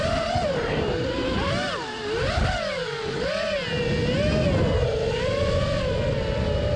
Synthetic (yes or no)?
no